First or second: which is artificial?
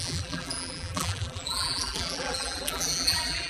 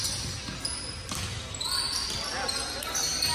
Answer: first